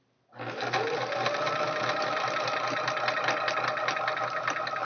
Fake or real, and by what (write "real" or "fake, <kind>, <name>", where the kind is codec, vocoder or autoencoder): real